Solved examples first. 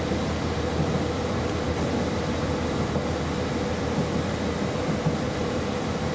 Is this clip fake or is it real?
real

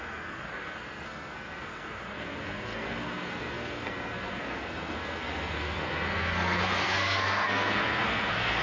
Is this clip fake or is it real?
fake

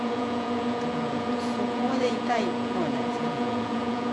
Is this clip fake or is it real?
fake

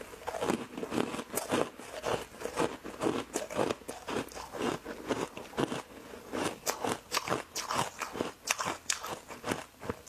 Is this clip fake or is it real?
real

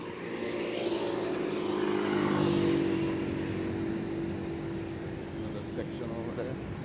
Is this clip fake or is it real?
real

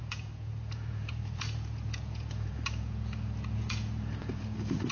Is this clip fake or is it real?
fake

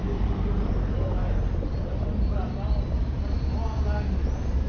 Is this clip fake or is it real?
real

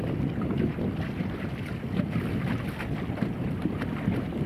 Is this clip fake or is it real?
real